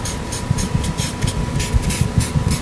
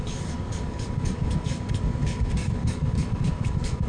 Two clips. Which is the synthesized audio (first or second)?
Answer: second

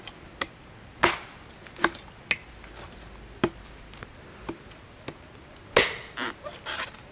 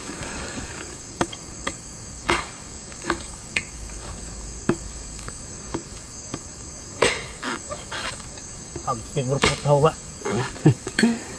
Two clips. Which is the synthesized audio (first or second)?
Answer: second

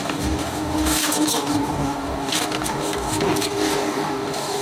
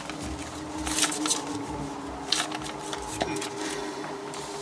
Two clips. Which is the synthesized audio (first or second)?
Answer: first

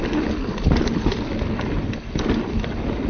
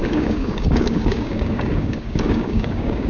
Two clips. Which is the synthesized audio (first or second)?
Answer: second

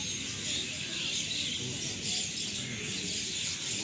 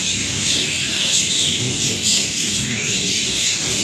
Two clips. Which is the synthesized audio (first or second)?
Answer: second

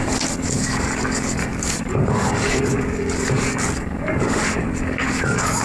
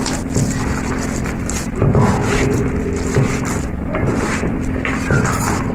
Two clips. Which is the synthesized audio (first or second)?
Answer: first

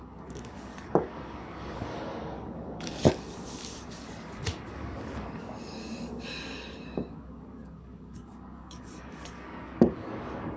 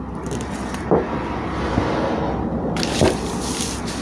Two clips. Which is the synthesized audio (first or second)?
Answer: first